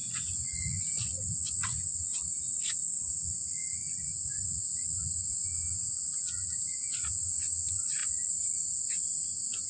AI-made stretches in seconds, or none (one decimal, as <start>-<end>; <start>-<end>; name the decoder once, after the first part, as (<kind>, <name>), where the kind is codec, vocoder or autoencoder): 0.0-9.7 (vocoder, Vocos)

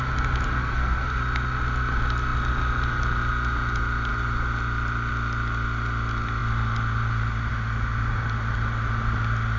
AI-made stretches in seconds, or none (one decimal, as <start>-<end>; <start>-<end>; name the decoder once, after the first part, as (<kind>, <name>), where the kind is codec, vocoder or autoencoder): 0.6-1.2 (codec, SNAC)

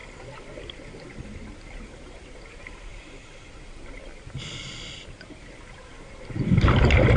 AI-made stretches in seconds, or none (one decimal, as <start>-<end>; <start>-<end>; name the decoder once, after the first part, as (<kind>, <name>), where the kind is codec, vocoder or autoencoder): none

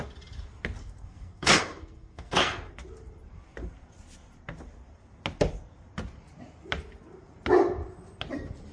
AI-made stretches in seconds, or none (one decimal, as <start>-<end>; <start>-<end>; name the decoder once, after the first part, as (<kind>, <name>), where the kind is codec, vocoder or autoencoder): 0.8-2.7 (codec, SNAC)